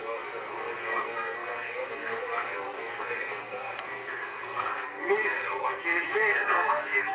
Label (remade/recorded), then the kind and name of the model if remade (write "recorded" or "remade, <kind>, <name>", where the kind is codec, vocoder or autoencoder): remade, codec, SNAC